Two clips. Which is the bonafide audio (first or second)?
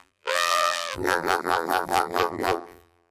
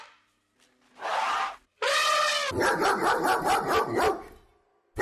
second